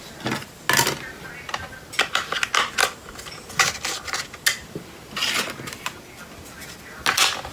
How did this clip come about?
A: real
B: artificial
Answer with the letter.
A